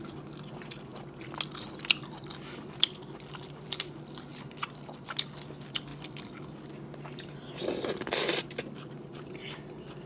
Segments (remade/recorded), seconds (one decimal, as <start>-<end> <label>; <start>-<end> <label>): 0.0-10.1 recorded